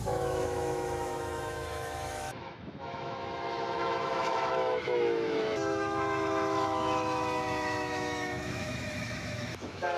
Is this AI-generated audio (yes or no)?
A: yes